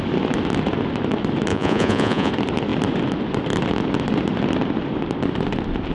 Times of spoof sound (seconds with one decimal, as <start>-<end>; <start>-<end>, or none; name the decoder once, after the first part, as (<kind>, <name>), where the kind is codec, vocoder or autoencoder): 1.5-2.3 (vocoder, Vocos)